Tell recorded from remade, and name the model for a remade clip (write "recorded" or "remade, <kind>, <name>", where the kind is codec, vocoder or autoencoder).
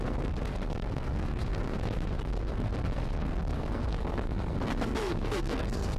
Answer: remade, codec, SNAC